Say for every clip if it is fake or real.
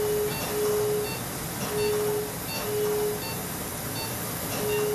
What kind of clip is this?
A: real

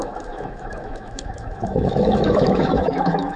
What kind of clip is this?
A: fake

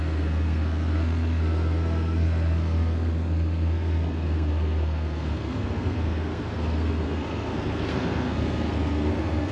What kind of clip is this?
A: fake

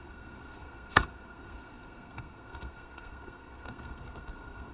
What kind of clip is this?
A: fake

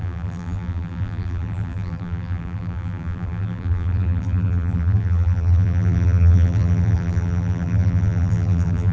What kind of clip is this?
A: fake